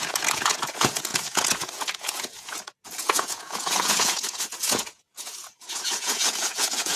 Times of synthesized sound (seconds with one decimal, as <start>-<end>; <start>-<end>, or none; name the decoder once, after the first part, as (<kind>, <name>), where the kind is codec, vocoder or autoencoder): 0.0-7.0 (vocoder, Vocos)